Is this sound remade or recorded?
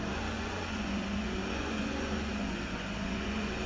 remade